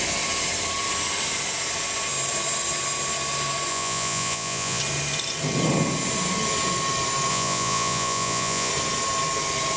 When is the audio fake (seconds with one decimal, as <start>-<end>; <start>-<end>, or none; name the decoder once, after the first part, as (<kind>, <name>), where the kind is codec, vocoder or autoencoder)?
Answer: 3.7-4.8 (vocoder, Vocos); 7.3-8.7